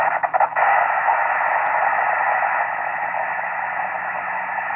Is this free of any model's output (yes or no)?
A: yes